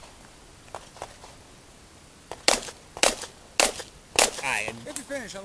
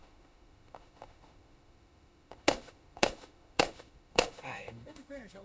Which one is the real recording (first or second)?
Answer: first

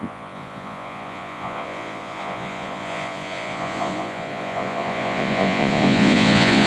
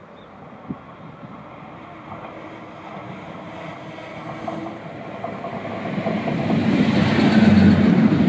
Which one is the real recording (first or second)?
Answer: second